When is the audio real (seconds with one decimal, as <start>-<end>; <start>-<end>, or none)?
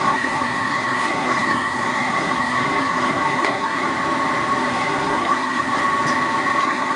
3.9-4.7; 5.8-6.6